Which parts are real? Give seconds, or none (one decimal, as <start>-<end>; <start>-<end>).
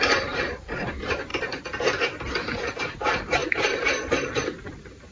1.3-2.8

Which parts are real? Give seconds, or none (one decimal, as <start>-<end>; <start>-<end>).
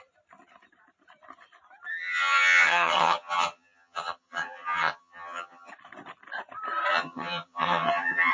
0.0-1.9; 5.7-6.9